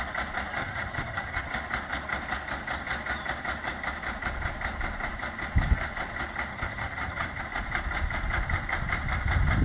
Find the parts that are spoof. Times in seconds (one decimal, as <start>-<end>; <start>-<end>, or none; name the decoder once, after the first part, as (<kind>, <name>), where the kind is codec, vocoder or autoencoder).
0.6-1.5 (vocoder, HiFi-GAN); 6.5-7.4